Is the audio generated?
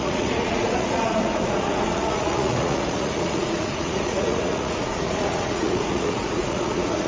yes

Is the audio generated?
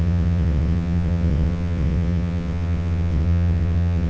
yes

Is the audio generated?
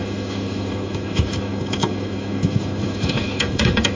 yes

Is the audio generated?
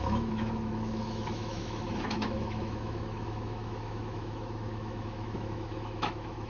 yes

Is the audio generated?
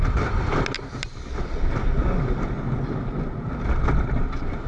no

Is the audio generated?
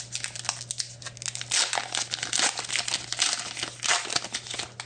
no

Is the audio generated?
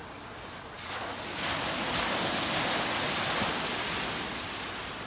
no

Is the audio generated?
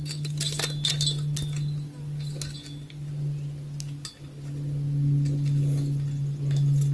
no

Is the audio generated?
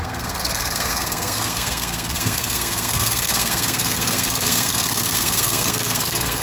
yes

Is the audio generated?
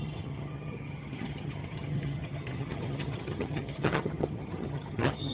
yes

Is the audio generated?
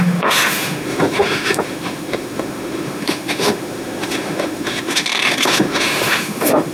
yes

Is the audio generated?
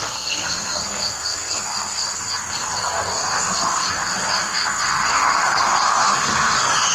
yes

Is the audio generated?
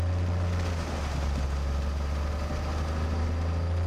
no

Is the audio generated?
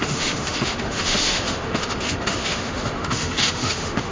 yes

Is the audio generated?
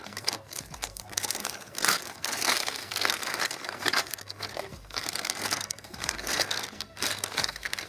yes